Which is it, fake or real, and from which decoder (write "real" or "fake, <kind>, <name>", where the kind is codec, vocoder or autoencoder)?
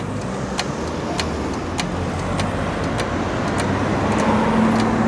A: real